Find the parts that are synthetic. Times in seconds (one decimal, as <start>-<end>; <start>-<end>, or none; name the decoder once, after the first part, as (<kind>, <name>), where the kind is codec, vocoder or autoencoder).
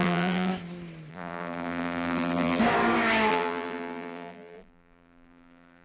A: 0.0-0.5 (vocoder, BigVGAN v2); 1.1-2.6; 3.3-5.8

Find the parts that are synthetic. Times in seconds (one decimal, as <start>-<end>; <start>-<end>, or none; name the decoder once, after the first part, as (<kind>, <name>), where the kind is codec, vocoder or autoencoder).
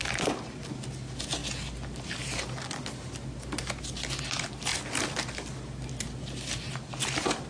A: none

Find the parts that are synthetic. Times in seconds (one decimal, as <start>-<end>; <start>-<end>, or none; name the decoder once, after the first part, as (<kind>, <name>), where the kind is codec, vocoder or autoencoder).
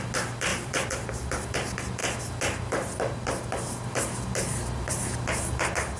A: 0.5-1.3 (vocoder, BigVGAN v2)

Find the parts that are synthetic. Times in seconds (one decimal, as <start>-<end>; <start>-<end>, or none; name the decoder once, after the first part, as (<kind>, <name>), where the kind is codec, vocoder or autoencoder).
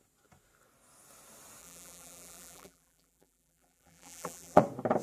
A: 1.6-4.6 (vocoder, BigVGAN v2)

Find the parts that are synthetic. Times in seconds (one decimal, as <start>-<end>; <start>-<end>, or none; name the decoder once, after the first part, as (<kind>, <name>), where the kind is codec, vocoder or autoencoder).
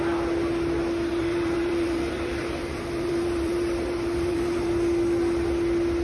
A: 1.1-4.7 (vocoder, BigVGAN v2)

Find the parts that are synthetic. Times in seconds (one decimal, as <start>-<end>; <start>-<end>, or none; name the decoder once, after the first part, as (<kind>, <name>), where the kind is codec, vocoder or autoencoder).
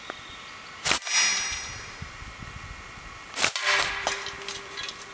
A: 1.3-2.2 (vocoder, BigVGAN v2)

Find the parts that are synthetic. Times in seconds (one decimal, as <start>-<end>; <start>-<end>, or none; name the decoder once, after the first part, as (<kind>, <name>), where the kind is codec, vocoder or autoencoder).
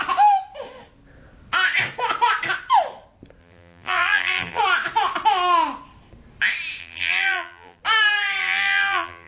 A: 3.4-4.6 (vocoder, BigVGAN v2); 6.8-7.8; 8.4-9.3